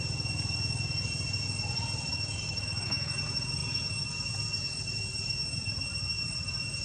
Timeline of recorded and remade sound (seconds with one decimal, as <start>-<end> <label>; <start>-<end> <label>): 0.0-2.1 recorded; 2.1-3.1 remade; 3.1-6.8 recorded